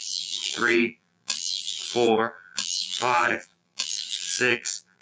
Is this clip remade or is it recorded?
remade